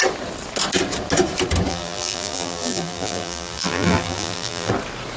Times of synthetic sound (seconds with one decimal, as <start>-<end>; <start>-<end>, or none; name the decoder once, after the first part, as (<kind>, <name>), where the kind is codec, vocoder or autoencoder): 1.7-4.7 (vocoder, BigVGAN v2)